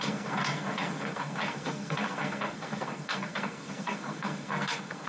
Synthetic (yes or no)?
yes